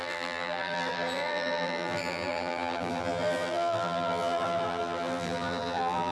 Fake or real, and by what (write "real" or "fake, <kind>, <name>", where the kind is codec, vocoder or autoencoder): fake, vocoder, BigVGAN v2